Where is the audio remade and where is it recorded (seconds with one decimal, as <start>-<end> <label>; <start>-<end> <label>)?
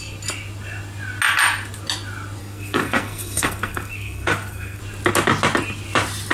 0.0-2.4 recorded; 2.4-4.8 remade; 4.8-6.3 recorded